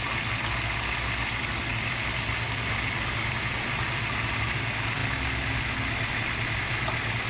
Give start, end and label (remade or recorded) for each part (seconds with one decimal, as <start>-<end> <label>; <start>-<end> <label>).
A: 0.0-7.3 recorded